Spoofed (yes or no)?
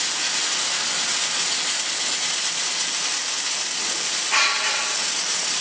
no